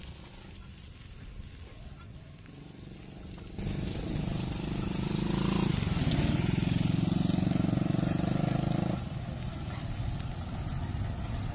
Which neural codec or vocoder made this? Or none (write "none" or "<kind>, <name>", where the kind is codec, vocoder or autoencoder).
none